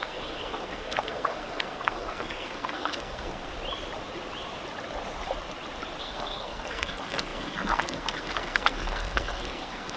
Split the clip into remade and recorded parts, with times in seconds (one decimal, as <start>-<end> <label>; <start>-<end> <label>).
0.0-3.5 remade; 3.5-6.0 recorded; 6.0-10.0 remade